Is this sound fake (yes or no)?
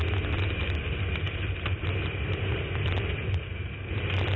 no